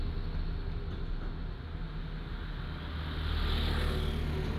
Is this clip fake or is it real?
real